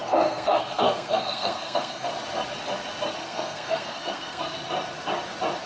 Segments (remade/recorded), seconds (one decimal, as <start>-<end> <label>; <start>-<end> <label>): 0.0-2.1 remade; 2.1-3.2 recorded; 3.2-4.4 remade; 4.4-5.7 recorded

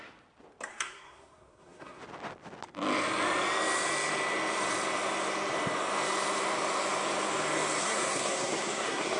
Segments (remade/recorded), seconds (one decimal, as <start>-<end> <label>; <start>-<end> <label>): 0.0-0.7 recorded; 0.7-2.0 remade; 2.0-7.8 recorded; 7.8-9.2 remade